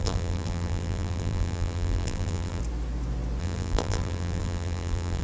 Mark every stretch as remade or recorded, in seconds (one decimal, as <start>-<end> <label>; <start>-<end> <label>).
0.0-2.6 remade; 2.6-3.4 recorded; 3.4-5.2 remade

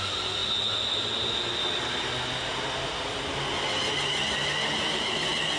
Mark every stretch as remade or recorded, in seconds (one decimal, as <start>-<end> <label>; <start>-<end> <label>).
0.0-5.6 recorded

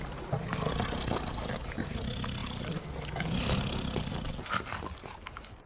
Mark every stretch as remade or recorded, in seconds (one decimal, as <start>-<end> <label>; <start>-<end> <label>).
0.0-5.7 recorded

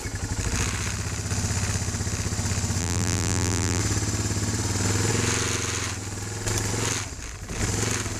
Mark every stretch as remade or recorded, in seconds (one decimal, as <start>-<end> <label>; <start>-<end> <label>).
0.0-2.8 recorded; 2.8-3.8 remade; 3.8-8.2 recorded

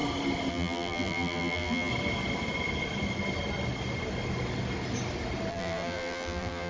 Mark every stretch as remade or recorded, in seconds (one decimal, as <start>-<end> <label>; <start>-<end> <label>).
0.0-0.5 recorded; 0.5-1.9 remade; 1.9-5.5 recorded; 5.5-6.7 remade